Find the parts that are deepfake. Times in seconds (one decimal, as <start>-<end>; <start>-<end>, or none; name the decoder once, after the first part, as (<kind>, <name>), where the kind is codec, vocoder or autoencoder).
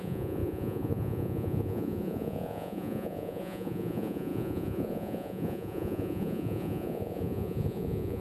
0.0-8.2 (vocoder, Vocos)